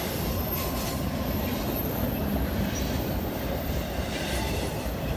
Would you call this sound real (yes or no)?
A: no